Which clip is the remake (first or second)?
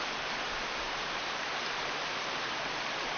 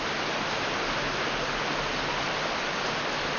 first